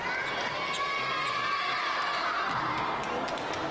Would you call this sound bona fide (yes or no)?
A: yes